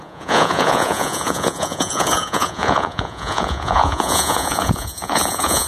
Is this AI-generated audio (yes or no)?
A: yes